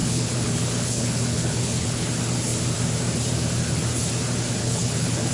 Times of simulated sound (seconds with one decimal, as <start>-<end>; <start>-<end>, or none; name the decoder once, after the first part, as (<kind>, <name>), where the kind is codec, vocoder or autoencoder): 0.0-2.1 (codec, HILCodec); 4.6-5.3